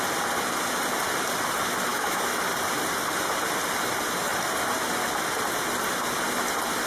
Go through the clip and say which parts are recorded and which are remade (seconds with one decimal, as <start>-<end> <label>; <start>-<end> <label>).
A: 0.0-1.9 recorded; 1.9-2.4 remade; 2.4-6.9 recorded